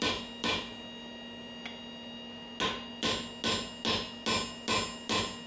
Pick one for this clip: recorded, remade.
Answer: recorded